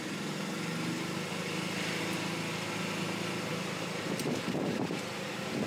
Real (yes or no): yes